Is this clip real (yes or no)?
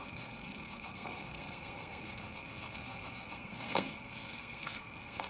no